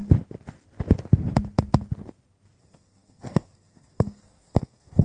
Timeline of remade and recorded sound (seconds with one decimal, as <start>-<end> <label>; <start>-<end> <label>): 0.0-2.6 recorded; 2.6-5.0 remade